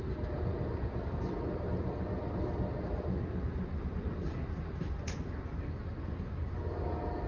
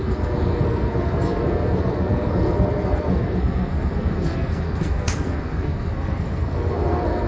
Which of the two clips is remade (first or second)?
second